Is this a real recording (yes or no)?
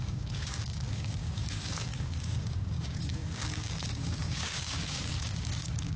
no